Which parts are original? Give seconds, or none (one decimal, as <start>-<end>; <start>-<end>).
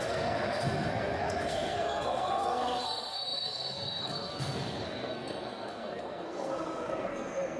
none